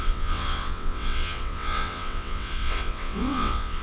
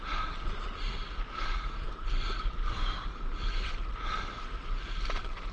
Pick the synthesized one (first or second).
first